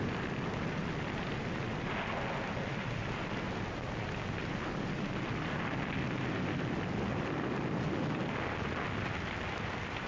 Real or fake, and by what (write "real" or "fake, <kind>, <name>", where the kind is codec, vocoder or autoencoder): real